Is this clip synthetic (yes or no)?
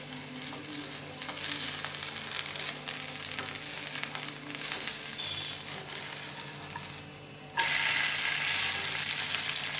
no